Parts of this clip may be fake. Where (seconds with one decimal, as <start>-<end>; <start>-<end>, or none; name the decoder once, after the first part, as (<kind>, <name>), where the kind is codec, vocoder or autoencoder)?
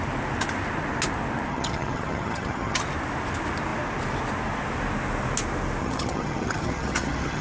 1.5-2.8 (vocoder, HiFi-GAN); 5.8-7.4